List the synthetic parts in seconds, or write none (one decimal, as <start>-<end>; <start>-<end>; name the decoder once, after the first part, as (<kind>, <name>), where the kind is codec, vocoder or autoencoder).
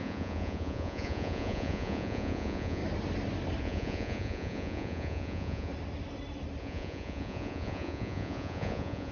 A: 0.0-2.8 (vocoder, Vocos); 3.6-5.7; 6.6-9.1